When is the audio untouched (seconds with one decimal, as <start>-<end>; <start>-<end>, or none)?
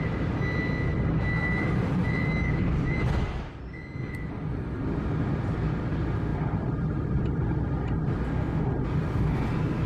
0.0-6.3; 7.9-9.9